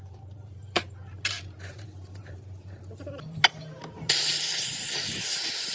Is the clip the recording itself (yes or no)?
no